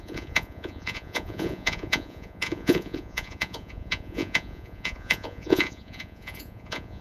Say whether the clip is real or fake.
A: fake